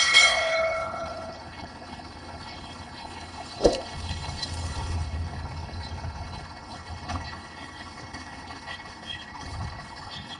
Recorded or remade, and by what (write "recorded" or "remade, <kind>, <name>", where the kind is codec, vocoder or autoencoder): remade, codec, HILCodec